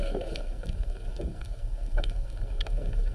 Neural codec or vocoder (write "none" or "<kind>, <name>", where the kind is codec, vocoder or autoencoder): codec, SNAC